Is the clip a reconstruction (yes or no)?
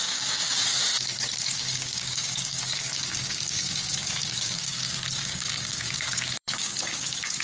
yes